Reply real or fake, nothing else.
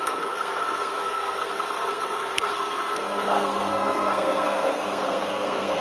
fake